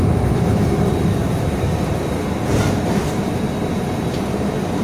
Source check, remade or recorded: remade